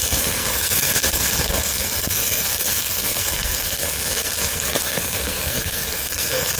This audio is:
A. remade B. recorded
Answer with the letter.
A